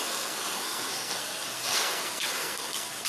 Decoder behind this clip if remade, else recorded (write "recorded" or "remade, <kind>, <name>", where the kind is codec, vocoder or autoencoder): remade, codec, SNAC